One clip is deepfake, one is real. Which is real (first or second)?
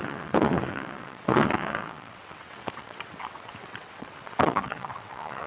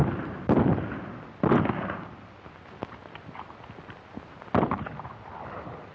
second